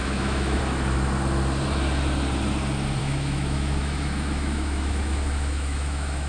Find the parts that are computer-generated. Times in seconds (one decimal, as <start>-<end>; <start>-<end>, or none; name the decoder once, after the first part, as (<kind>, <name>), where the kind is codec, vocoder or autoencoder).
0.0-0.6 (autoencoder, DAC-VAE); 3.0-6.3